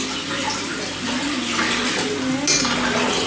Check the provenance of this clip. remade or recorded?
recorded